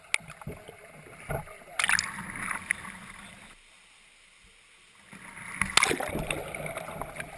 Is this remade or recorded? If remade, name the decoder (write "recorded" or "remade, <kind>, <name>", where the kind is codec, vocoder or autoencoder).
recorded